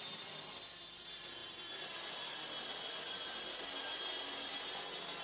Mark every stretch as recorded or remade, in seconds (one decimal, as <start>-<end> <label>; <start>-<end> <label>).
0.0-5.2 recorded